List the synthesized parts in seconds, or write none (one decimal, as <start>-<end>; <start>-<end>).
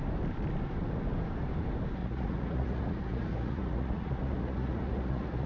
2.0-5.5